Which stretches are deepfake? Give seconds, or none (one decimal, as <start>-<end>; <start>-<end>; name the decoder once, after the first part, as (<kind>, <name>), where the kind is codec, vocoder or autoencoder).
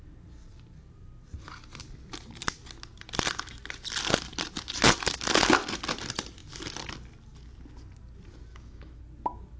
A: 8.5-9.0 (autoencoder, DAC-VAE)